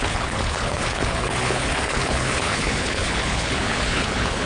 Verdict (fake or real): fake